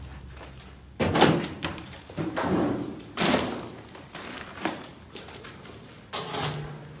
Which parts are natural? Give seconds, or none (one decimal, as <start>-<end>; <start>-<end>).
0.0-1.7; 5.9-7.0

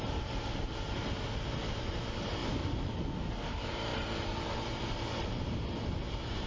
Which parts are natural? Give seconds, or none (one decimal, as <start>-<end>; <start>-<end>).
2.4-2.9

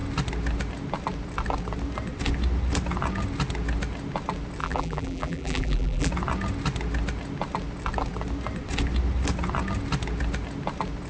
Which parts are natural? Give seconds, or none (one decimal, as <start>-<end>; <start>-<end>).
0.0-4.6; 6.1-11.1